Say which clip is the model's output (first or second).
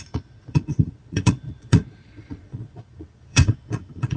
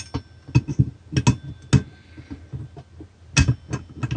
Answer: first